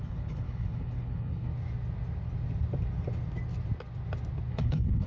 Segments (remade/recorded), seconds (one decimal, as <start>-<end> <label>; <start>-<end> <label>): 0.0-1.5 remade; 1.5-4.5 recorded; 4.5-5.1 remade